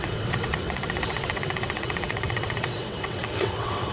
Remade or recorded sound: remade